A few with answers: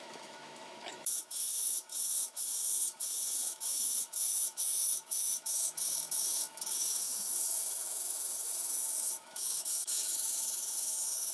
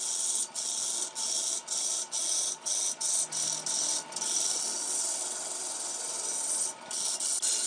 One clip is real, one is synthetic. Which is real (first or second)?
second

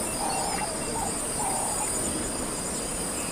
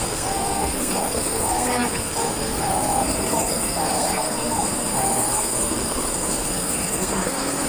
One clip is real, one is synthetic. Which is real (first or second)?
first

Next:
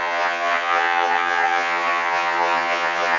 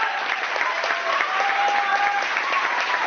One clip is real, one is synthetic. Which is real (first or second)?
second